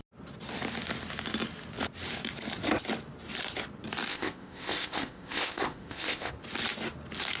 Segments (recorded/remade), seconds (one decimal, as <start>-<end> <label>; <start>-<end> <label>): 0.0-4.1 recorded; 4.1-6.3 remade; 6.3-7.4 recorded

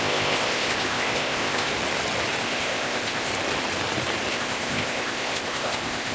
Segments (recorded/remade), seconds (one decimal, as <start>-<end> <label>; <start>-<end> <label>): 0.0-1.7 remade; 1.7-2.4 recorded; 2.4-3.3 remade; 3.3-4.3 recorded; 4.3-6.1 remade

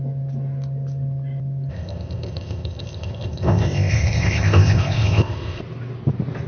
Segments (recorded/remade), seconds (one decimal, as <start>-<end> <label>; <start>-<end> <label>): 0.0-1.7 recorded; 1.7-5.6 remade; 5.6-6.5 recorded

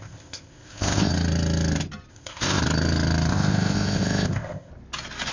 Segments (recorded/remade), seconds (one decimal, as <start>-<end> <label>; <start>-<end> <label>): 0.0-1.1 remade; 1.1-2.1 recorded; 2.1-2.6 remade; 2.6-3.3 recorded; 3.3-4.7 remade; 4.7-5.3 recorded

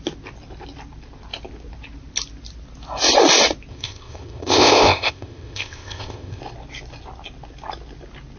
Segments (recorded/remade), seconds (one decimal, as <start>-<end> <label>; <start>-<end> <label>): 0.0-3.7 recorded; 3.7-6.4 remade; 6.4-8.4 recorded